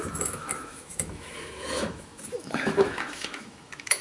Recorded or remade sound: remade